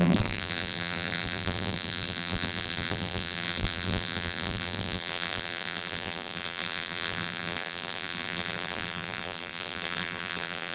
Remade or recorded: remade